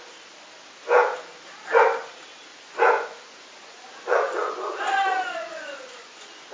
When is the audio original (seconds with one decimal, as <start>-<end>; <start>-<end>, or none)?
0.0-2.5